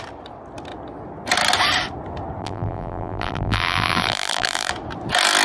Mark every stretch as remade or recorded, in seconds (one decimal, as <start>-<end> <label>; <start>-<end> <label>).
0.0-2.4 recorded; 2.4-4.7 remade; 4.7-5.4 recorded